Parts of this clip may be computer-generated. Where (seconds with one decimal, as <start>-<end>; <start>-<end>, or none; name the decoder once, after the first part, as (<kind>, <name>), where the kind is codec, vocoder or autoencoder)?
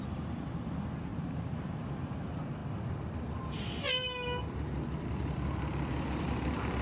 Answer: none